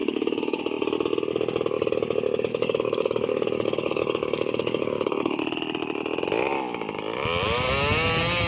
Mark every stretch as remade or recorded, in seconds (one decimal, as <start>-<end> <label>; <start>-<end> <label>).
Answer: 0.0-0.6 remade; 0.6-2.5 recorded; 2.5-5.4 remade; 5.4-8.5 recorded